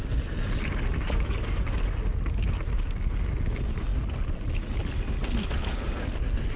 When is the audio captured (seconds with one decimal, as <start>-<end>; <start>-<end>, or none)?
0.0-0.7; 1.8-6.6